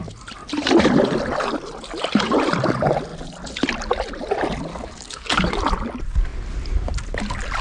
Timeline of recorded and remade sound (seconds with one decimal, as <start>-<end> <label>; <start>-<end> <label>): 0.0-4.7 recorded; 4.7-5.6 remade; 5.6-7.6 recorded